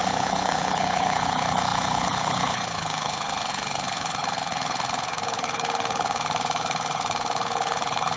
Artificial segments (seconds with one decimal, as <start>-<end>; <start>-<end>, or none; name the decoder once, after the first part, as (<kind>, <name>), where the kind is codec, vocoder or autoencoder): 0.0-8.2 (codec, HILCodec)

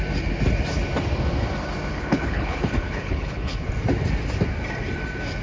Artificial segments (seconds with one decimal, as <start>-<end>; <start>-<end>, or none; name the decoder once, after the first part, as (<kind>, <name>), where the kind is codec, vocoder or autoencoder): 1.9-3.7 (codec, HILCodec)

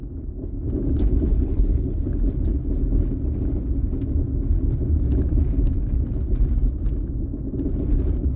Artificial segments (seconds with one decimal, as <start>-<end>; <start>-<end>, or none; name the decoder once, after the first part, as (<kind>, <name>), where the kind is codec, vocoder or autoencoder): 1.1-2.1 (codec, HILCodec)

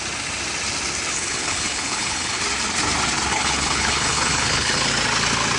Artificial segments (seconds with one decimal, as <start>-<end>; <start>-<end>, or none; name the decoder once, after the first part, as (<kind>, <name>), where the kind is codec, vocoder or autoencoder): 1.1-2.4 (codec, HILCodec); 3.3-4.9

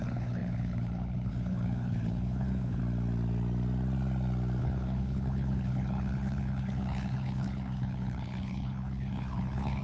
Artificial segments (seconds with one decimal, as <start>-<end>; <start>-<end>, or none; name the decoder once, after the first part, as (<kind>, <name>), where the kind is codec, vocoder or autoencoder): 0.0-2.8 (codec, HILCodec); 4.6-9.8

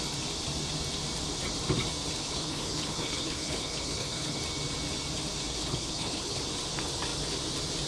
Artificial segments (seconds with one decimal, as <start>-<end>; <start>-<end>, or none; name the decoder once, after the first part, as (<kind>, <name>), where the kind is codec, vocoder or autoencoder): 2.2-4.4 (codec, HILCodec); 5.6-6.4

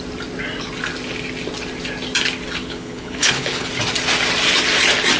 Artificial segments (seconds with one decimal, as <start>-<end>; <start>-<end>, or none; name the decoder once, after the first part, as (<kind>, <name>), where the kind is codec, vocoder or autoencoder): 2.6-3.7 (codec, HILCodec)